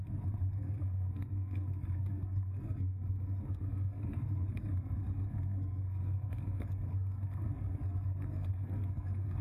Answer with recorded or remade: remade